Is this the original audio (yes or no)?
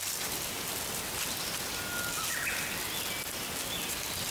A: yes